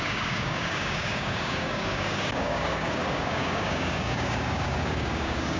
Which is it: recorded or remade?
remade